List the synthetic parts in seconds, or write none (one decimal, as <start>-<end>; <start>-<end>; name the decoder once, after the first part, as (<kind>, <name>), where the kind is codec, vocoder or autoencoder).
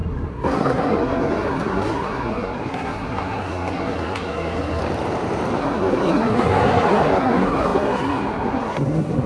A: 0.0-4.8 (codec, SNAC); 5.6-9.3